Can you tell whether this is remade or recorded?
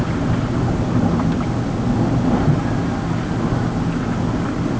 recorded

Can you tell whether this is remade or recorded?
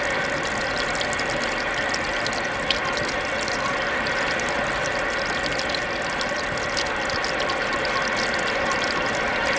recorded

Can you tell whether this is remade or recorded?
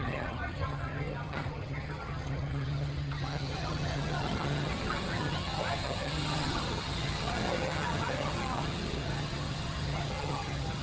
remade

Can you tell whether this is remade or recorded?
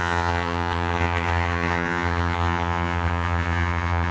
remade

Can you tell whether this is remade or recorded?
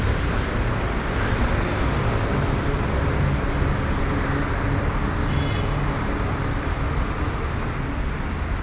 recorded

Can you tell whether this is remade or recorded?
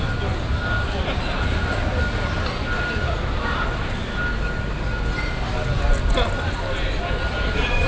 recorded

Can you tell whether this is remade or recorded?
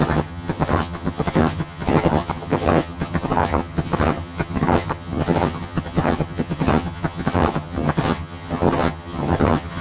remade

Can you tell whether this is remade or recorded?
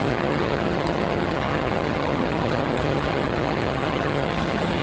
remade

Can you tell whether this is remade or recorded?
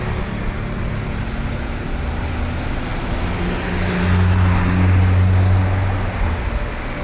recorded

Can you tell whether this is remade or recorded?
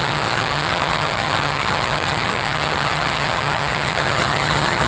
remade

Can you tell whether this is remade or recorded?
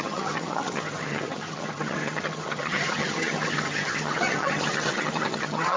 remade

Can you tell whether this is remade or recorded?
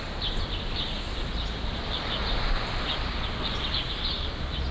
recorded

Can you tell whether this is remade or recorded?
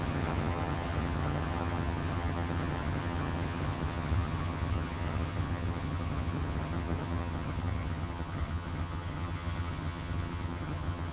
remade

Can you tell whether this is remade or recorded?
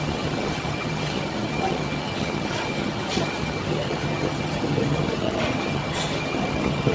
remade